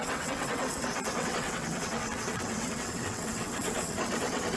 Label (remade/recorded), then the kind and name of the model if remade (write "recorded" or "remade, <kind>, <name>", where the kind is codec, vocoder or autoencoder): remade, vocoder, WaveNeXt